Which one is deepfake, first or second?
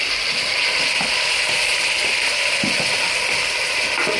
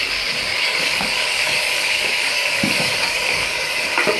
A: second